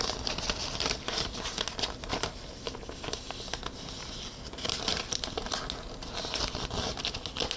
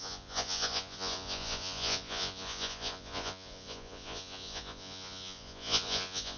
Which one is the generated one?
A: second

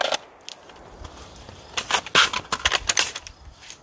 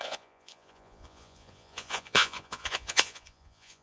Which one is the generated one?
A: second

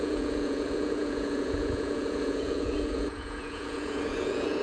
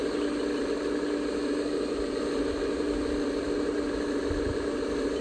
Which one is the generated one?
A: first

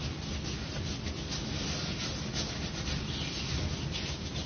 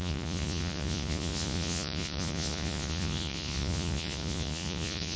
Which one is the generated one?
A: second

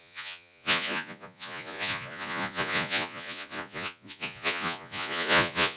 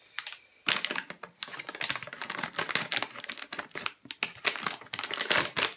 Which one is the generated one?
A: first